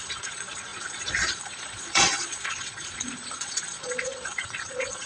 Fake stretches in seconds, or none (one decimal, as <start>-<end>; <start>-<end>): 0.0-5.1